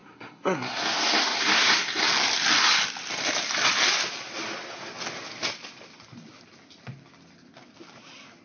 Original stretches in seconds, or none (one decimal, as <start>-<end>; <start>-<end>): 2.1-8.4